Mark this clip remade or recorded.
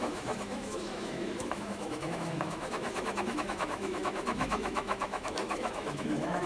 remade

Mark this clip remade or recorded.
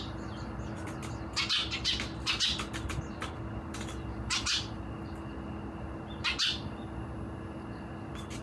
recorded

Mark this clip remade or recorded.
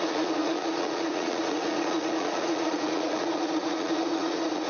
remade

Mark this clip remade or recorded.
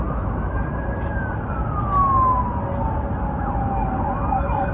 recorded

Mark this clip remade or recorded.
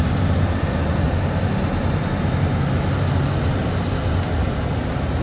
recorded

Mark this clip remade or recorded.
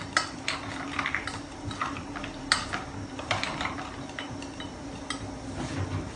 recorded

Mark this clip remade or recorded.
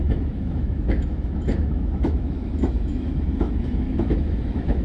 remade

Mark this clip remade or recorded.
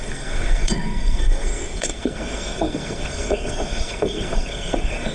remade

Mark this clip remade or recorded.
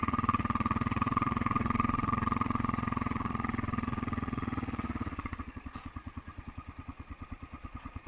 remade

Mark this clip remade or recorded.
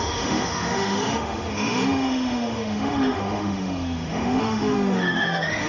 remade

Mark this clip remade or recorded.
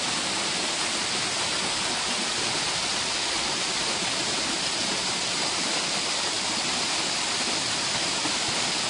recorded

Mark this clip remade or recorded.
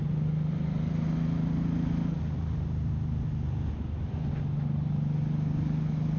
recorded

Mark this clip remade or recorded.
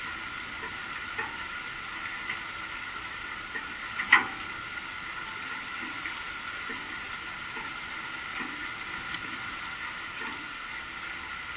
recorded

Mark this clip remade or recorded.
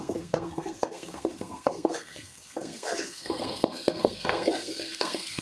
remade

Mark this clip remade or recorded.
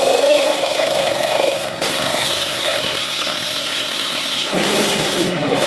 remade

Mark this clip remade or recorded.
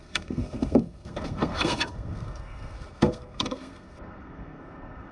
remade